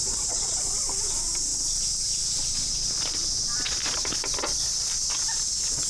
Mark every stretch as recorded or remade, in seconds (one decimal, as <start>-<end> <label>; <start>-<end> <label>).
0.0-0.6 remade; 0.6-5.9 recorded